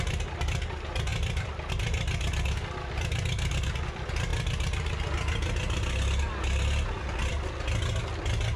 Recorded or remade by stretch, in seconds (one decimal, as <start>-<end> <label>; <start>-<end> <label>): 0.0-8.6 recorded